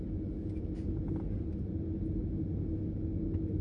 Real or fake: real